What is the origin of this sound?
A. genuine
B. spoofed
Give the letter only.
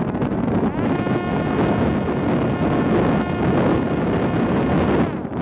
A